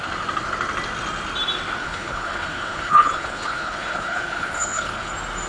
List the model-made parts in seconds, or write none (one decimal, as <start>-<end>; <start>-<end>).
1.8-5.1